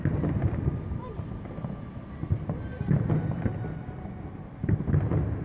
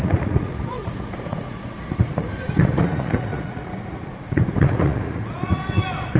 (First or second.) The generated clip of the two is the second